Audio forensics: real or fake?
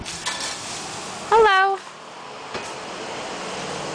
real